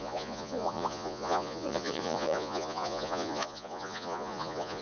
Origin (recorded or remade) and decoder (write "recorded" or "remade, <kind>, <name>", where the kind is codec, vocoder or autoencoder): remade, vocoder, Vocos